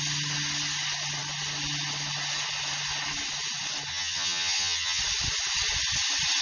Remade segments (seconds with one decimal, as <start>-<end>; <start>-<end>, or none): 3.9-5.0